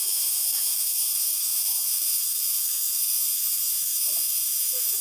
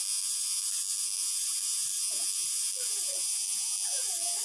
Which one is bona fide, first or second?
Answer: second